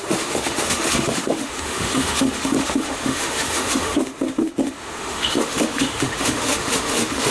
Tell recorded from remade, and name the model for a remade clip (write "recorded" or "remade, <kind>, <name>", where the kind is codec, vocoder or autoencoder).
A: remade, autoencoder, DAC-VAE